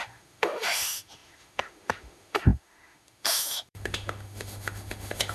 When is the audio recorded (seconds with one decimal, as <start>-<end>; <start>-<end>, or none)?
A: none